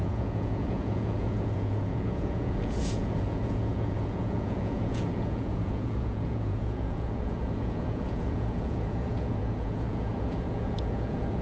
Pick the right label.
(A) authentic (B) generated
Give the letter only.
B